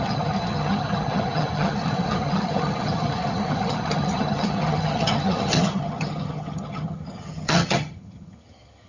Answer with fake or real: fake